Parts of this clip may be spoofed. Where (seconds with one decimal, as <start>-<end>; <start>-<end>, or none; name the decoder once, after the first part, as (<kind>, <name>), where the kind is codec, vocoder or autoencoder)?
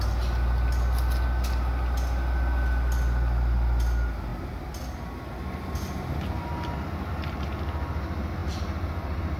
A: none